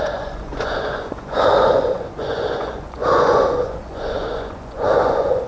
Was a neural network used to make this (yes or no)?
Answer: yes